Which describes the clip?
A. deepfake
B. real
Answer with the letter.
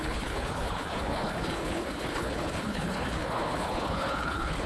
A